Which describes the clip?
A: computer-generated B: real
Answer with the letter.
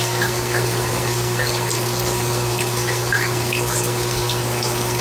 A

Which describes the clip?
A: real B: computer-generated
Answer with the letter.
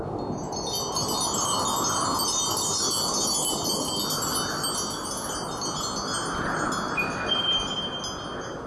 A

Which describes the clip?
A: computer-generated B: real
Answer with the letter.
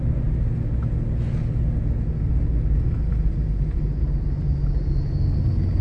B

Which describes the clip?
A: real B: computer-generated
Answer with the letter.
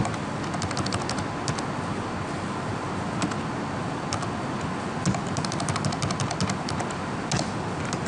A